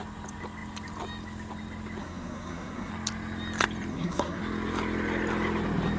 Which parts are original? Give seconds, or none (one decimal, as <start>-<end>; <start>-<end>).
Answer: 0.0-2.0; 2.9-3.9; 4.4-6.0